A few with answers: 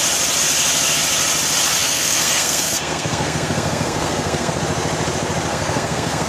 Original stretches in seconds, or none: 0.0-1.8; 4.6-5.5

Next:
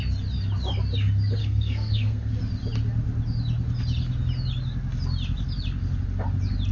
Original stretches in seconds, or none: 0.0-1.4; 2.3-6.7

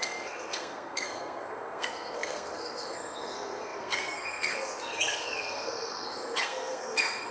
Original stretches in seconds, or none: none

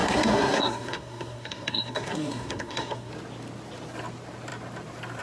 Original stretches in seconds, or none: 3.1-5.2